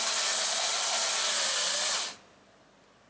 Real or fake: real